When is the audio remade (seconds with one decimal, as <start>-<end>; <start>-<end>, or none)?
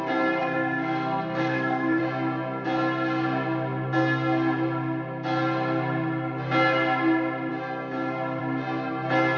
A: 0.4-2.0